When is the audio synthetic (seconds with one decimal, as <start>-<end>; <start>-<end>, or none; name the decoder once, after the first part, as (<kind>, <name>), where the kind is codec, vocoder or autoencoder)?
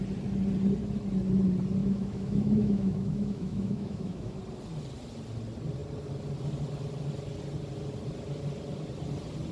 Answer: 1.8-4.4 (autoencoder, DAC-VAE)